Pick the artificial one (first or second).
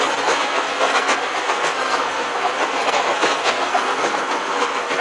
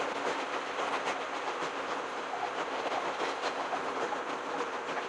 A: first